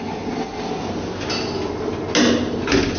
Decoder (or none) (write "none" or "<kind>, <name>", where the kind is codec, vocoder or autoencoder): none